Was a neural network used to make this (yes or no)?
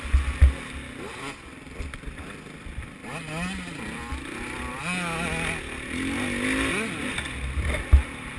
no